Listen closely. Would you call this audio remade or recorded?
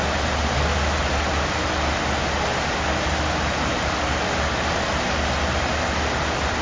recorded